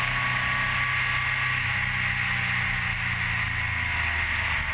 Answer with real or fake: real